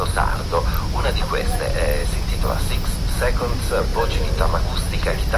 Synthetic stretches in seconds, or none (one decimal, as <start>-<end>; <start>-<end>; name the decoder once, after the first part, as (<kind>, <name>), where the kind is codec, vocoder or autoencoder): 2.0-2.7 (vocoder, Vocos)